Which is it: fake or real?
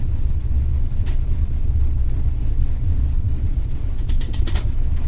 fake